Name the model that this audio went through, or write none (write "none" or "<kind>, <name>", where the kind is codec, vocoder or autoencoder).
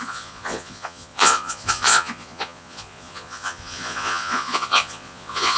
vocoder, Vocos